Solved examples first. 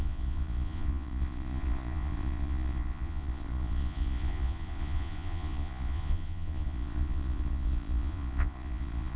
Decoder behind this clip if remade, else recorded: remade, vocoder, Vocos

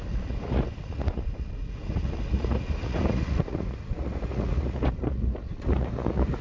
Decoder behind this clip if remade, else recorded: remade, vocoder, Vocos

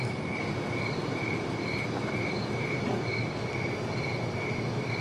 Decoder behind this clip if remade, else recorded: recorded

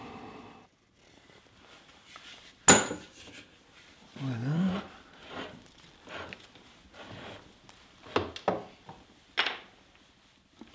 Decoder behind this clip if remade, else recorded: recorded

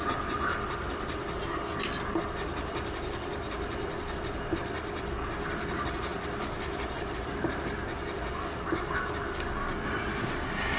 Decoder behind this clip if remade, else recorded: recorded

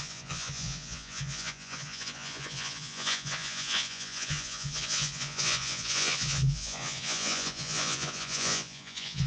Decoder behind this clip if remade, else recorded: remade, vocoder, Vocos